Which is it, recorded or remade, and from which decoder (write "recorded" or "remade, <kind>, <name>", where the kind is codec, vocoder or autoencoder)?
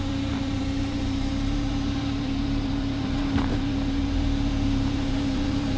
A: remade, vocoder, BigVGAN v2